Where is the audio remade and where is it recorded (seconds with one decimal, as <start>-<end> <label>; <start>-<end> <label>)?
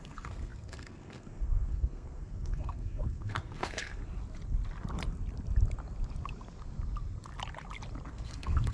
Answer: 0.0-4.0 remade; 4.0-8.1 recorded; 8.1-8.7 remade